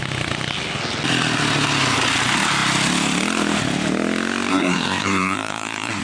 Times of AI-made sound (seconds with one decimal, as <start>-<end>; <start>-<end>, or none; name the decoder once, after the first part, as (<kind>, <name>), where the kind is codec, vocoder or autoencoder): 4.5-6.0 (codec, SNAC)